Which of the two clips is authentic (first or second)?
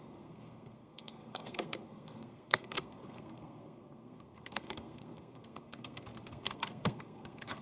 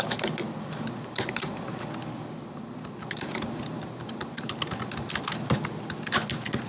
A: second